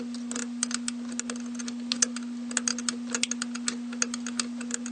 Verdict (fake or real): real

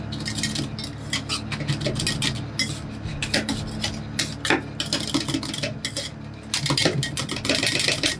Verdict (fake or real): real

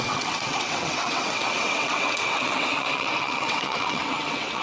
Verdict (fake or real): fake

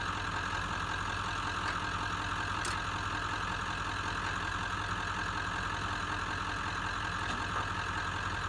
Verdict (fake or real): real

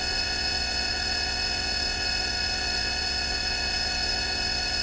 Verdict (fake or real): fake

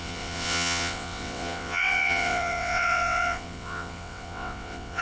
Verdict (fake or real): fake